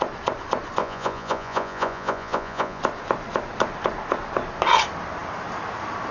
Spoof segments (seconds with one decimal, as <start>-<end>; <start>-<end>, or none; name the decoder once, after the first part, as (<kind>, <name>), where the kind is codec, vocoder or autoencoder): 0.8-2.8 (vocoder, Vocos)